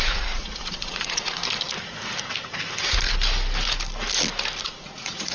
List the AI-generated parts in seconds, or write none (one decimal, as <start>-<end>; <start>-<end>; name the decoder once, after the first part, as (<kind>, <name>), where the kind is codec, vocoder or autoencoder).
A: 0.0-1.4 (vocoder, Vocos); 4.6-5.3